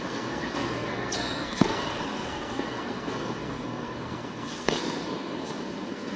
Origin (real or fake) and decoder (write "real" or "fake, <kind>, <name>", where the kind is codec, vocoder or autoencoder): fake, codec, SNAC